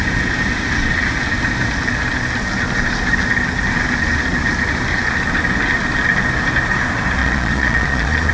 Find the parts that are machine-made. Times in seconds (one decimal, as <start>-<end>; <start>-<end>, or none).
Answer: 7.2-8.3